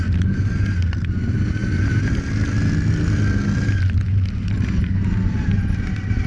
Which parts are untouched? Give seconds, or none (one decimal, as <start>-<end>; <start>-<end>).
0.0-6.3